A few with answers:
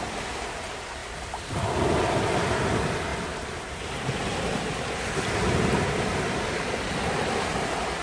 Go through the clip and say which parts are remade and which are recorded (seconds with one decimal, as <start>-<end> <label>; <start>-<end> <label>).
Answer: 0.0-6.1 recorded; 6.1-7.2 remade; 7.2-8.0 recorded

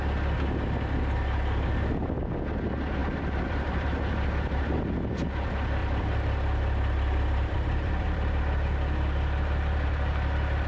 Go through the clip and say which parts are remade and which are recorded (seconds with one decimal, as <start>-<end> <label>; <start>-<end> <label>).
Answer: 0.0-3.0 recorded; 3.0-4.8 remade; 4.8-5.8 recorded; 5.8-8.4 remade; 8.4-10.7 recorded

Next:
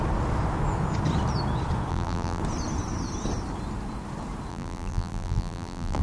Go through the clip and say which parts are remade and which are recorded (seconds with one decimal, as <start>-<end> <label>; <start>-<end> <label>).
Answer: 0.0-1.9 recorded; 1.9-2.4 remade; 2.4-4.5 recorded; 4.5-6.0 remade